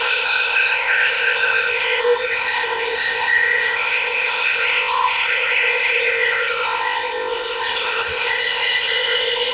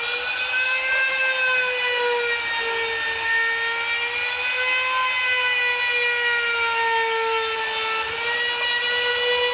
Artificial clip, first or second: first